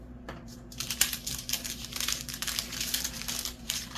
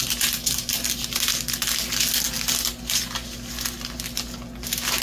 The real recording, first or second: second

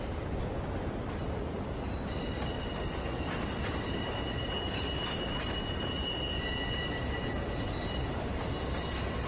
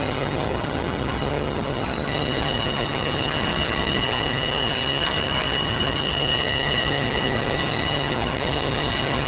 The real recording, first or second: first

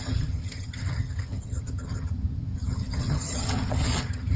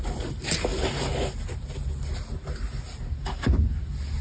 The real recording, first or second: second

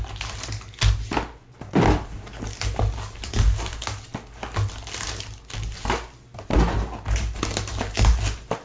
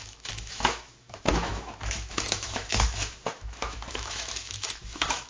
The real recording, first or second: first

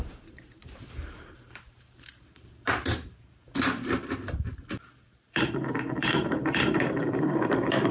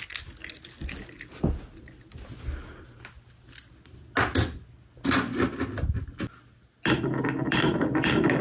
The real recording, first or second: second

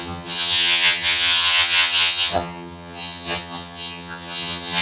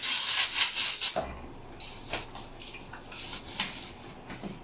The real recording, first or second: second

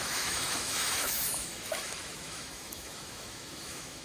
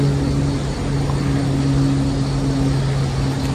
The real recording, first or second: second